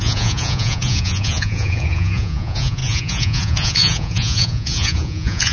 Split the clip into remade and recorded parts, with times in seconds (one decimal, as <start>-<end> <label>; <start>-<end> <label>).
0.0-5.5 remade